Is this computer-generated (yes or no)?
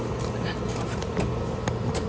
no